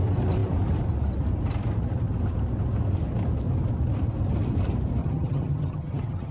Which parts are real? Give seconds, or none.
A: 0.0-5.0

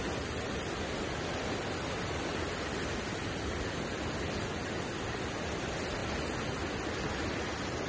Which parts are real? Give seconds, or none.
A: 0.0-7.9